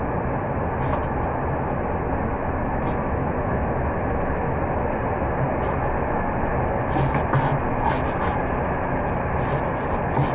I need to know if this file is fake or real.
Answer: real